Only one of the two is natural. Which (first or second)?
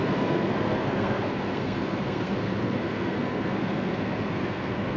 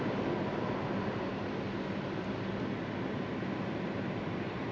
second